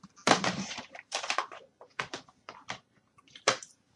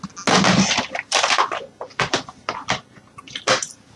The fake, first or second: first